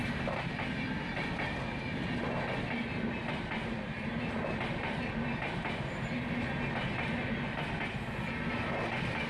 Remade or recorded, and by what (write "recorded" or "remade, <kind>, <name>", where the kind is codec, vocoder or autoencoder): recorded